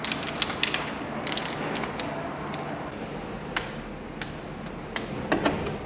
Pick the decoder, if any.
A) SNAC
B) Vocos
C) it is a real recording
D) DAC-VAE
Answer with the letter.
C